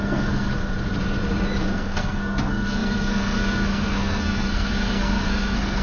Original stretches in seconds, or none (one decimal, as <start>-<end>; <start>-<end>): 0.5-1.6